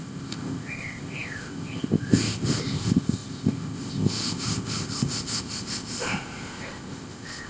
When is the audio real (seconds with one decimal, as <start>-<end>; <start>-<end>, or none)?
none